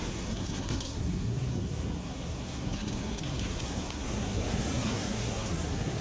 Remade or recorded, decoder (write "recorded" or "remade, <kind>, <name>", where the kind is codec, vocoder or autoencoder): remade, codec, SNAC